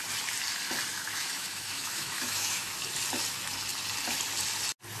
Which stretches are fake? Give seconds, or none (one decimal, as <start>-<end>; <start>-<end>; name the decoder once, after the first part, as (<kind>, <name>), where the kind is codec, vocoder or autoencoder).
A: 0.9-2.8 (autoencoder, DAC-VAE)